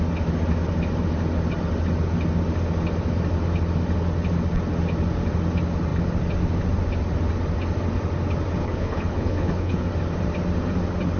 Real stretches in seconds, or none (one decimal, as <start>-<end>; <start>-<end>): 0.0-8.6; 9.9-11.2